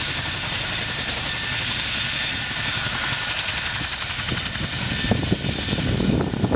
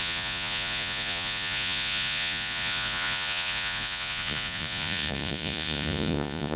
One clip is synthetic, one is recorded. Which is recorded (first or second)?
first